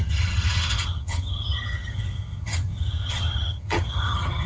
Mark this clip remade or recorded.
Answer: remade